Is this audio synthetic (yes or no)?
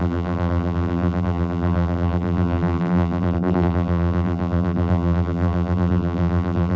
yes